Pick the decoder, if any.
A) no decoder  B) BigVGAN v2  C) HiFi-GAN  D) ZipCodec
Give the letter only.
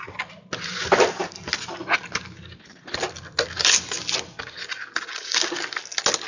A